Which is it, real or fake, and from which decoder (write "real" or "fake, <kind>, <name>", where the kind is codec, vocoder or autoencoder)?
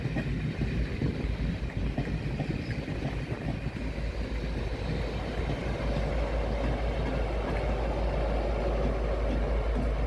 real